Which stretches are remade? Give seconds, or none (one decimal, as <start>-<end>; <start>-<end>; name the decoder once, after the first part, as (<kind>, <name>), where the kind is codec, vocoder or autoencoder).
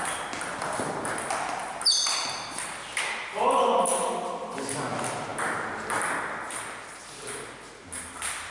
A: none